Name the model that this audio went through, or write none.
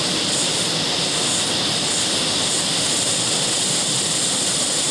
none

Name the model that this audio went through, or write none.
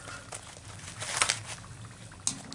none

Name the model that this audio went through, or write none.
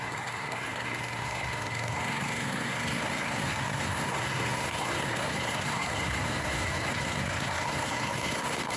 codec, SNAC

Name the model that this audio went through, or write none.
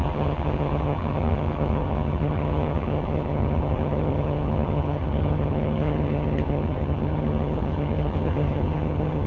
vocoder, HiFi-GAN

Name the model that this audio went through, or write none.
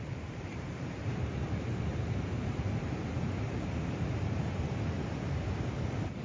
vocoder, BigVGAN v2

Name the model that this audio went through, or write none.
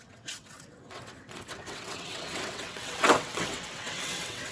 vocoder, WaveNeXt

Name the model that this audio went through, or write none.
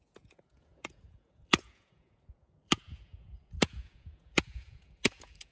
vocoder, Vocos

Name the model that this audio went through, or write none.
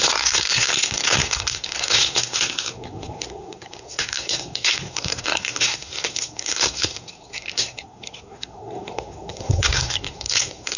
codec, SNAC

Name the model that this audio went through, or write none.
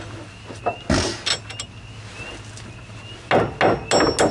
none